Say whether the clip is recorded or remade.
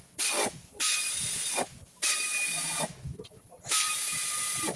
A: recorded